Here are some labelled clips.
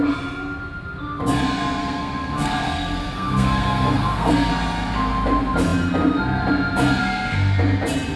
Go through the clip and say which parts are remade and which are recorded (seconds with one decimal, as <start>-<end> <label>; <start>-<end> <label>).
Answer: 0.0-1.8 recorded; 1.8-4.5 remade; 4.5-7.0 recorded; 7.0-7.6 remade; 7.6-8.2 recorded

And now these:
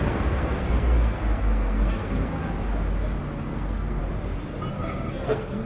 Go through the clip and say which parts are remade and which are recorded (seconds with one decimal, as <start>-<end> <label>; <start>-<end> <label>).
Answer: 0.0-2.4 remade; 2.4-3.4 recorded; 3.4-4.0 remade; 4.0-4.7 recorded; 4.7-5.7 remade

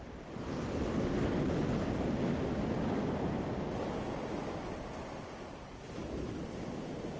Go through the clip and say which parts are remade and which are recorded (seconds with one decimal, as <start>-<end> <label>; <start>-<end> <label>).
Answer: 0.0-7.2 recorded

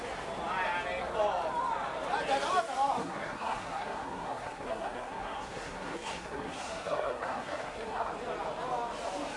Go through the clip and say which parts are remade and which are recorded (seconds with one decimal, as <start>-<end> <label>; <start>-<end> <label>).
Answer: 0.0-3.0 recorded; 3.0-8.1 remade; 8.1-9.4 recorded

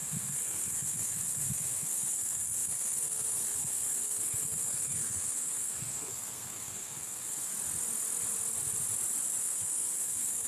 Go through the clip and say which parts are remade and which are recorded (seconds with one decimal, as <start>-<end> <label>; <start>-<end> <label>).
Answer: 0.0-7.5 remade; 7.5-9.4 recorded; 9.4-10.5 remade

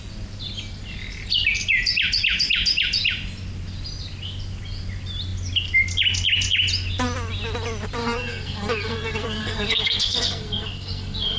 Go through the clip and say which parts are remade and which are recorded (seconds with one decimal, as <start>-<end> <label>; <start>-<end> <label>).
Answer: 0.0-8.0 recorded; 8.0-11.4 remade